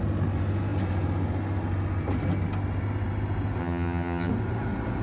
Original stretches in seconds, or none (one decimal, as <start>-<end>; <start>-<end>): 0.0-3.6; 4.3-5.0